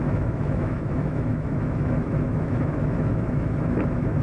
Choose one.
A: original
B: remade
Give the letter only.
B